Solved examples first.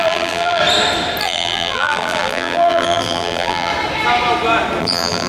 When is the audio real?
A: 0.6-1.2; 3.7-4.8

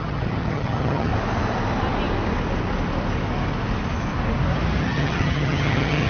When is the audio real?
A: 1.1-4.8

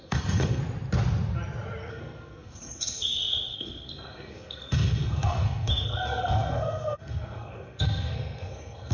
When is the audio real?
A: 0.6-1.9

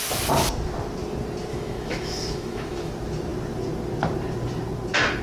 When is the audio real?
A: 0.0-1.5; 2.9-5.2

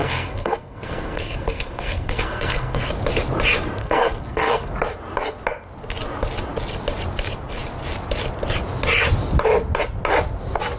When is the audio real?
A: 2.9-3.8; 4.7-10.8

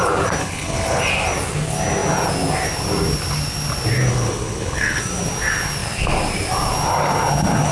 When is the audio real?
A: 0.0-0.4; 1.0-4.1; 5.0-7.7

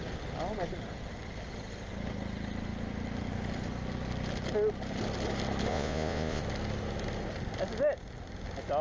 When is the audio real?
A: 0.0-5.7; 6.4-8.8